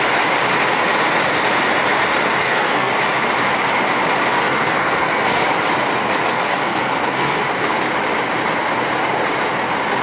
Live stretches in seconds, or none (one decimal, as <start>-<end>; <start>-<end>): 0.0-2.4; 2.9-4.5; 5.4-6.3; 7.4-10.0